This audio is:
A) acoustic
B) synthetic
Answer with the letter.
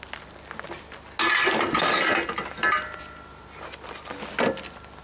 A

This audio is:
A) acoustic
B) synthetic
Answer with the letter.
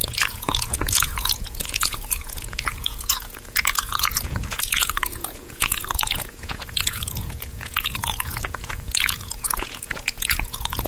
B